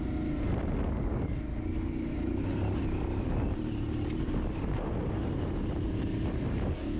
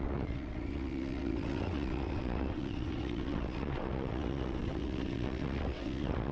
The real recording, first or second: first